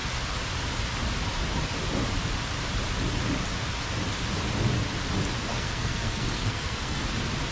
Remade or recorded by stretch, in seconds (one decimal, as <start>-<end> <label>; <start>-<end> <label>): 0.0-5.5 recorded; 5.5-7.0 remade; 7.0-7.5 recorded